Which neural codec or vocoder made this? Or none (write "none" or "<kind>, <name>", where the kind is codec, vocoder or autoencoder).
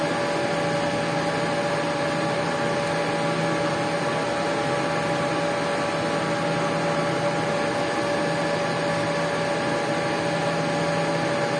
none